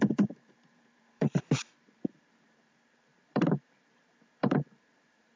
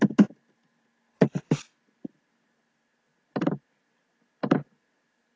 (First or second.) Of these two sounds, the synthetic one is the first